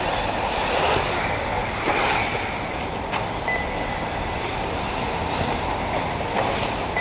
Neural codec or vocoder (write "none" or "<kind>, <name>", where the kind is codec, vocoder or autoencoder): none